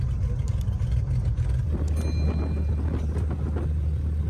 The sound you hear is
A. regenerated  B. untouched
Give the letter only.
B